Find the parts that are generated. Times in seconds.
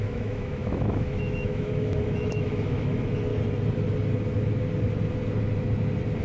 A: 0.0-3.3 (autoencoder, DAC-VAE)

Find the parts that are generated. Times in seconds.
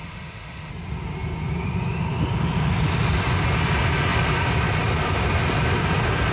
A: 0.0-0.7 (autoencoder, DAC-VAE)